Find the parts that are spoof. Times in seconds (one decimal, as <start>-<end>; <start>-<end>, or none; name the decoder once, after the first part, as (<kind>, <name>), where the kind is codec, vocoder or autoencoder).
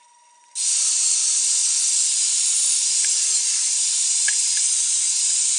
none